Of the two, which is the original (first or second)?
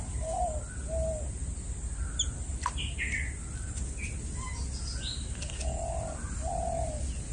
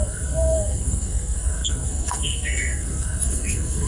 first